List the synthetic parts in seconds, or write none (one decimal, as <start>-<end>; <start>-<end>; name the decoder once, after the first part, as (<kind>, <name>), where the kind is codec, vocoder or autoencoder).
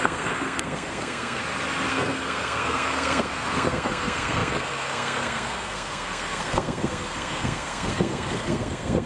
0.0-1.4 (codec, SNAC); 1.9-9.1